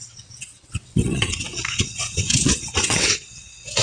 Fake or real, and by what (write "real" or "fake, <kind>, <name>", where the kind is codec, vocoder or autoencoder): fake, vocoder, WaveNeXt